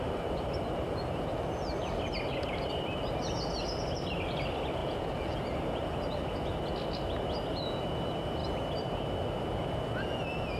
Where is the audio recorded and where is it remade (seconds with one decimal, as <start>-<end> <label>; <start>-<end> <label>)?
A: 0.0-4.8 recorded; 4.8-5.4 remade; 5.4-10.6 recorded